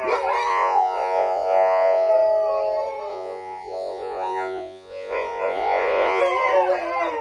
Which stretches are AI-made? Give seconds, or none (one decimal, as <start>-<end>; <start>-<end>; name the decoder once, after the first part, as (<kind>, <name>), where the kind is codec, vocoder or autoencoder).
0.5-2.1 (vocoder, Vocos); 3.1-6.2